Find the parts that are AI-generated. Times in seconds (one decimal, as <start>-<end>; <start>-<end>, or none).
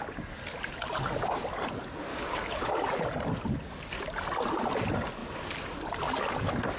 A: 2.1-2.7